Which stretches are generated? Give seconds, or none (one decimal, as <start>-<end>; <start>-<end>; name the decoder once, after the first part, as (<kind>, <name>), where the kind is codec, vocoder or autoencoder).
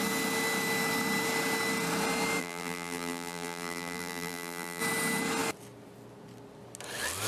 2.4-4.8 (vocoder, BigVGAN v2)